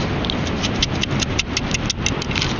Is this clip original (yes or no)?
yes